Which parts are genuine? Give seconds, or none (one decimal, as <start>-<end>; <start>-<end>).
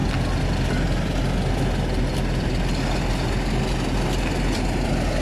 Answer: 0.0-5.2